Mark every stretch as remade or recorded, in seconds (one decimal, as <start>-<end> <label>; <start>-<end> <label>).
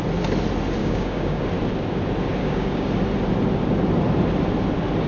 0.0-0.8 recorded; 0.8-1.4 remade; 1.4-2.4 recorded; 2.4-2.9 remade; 2.9-5.1 recorded